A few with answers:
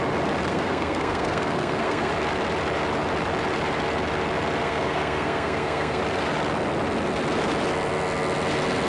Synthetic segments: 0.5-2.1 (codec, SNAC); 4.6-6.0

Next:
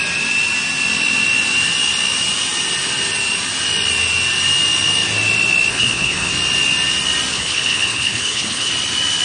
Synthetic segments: 5.7-6.3 (codec, HILCodec); 7.3-8.7

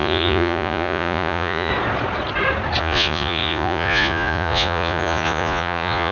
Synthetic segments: 0.0-1.7 (vocoder, Vocos); 2.8-6.1

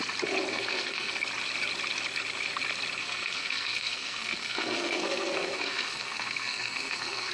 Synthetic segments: 0.5-1.1 (codec, SNAC); 3.0-7.3

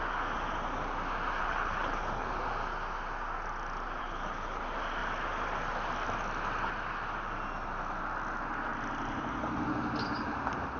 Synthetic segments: 1.4-2.3 (codec, HILCodec); 4.0-4.6

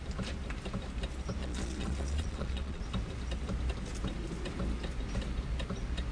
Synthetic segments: 1.4-2.8 (vocoder, Vocos)

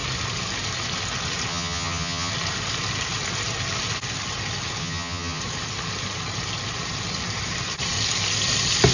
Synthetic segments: 1.5-2.3 (vocoder, HiFi-GAN); 4.8-5.4

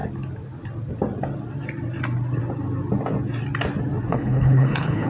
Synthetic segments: 4.1-5.1 (codec, HILCodec)